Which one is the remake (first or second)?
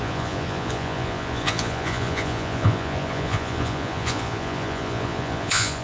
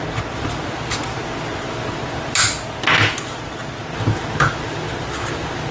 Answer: first